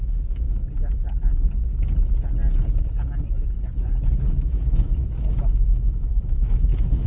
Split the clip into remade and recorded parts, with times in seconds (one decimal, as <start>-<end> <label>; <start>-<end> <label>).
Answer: 0.0-0.6 remade; 0.6-4.3 recorded; 4.3-7.1 remade